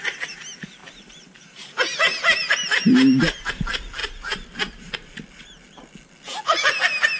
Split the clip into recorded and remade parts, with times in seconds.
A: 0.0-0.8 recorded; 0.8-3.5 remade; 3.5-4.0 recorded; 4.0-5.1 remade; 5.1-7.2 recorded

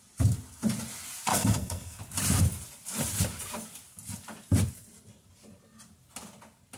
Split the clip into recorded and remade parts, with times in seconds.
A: 0.0-1.3 recorded; 1.3-2.0 remade; 2.0-6.8 recorded

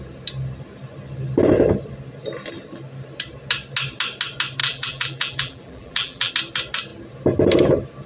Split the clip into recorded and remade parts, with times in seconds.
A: 0.0-4.6 recorded; 4.6-6.3 remade; 6.3-8.1 recorded

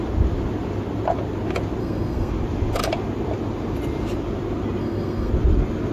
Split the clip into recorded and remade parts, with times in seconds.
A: 0.0-1.8 recorded; 1.8-2.3 remade; 2.3-4.8 recorded; 4.8-5.3 remade; 5.3-5.9 recorded

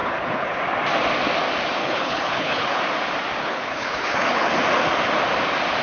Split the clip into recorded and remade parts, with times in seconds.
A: 0.0-0.6 remade; 0.6-1.8 recorded; 1.8-2.8 remade; 2.8-3.4 recorded; 3.4-4.5 remade; 4.5-5.8 recorded